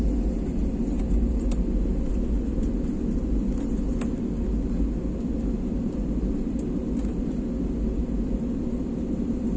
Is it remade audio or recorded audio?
recorded